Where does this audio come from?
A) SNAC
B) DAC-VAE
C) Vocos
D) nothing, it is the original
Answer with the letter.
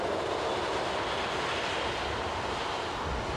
D